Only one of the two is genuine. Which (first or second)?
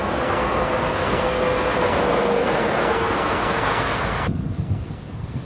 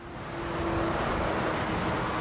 second